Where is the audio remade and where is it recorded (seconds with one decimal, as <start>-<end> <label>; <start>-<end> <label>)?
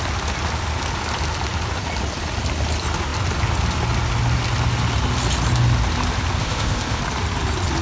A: 0.0-6.4 recorded; 6.4-7.0 remade; 7.0-7.8 recorded